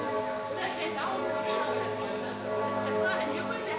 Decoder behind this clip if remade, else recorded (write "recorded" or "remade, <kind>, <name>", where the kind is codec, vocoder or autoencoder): recorded